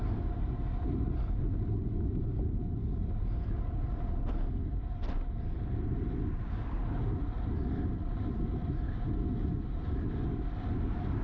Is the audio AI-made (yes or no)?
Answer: no